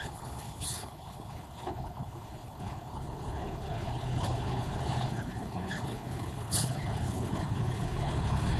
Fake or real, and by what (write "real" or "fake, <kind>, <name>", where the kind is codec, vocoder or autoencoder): fake, codec, HILCodec